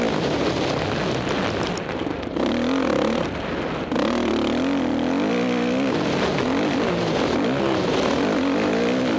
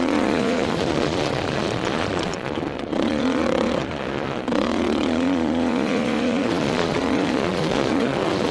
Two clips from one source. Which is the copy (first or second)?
second